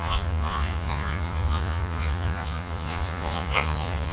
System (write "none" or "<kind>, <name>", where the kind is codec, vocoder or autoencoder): vocoder, Vocos